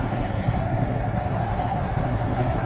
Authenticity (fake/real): fake